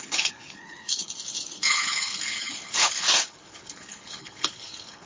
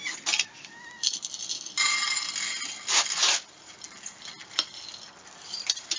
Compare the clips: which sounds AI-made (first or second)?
first